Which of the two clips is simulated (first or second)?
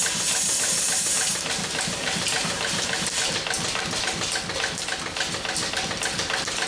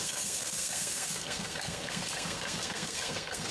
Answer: second